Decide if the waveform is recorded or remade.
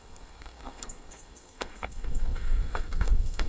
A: remade